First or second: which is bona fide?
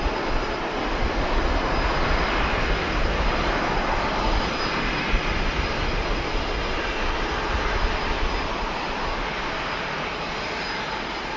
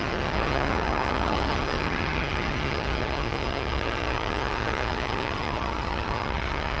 first